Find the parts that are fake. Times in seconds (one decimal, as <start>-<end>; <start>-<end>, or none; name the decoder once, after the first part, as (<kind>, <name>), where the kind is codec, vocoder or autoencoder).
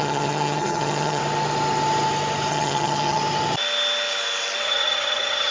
0.0-1.2 (vocoder, HiFi-GAN); 2.5-3.2; 4.6-5.5